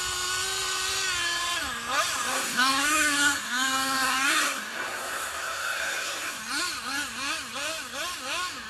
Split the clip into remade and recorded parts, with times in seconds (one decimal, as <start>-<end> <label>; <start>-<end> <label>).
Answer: 0.0-2.3 recorded; 2.3-6.4 remade; 6.4-8.7 recorded